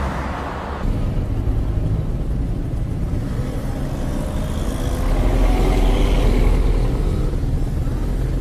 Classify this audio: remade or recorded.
recorded